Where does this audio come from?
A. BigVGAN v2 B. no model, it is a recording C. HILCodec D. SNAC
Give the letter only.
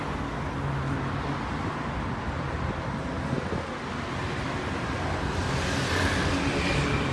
B